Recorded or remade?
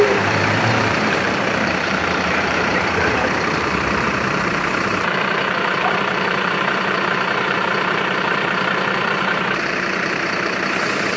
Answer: remade